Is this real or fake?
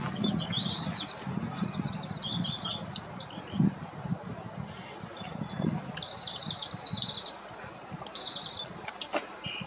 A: real